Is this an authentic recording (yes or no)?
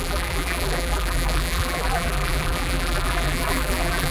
no